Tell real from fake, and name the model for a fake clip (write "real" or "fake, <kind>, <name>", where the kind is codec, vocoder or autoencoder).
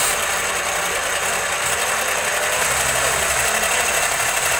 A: real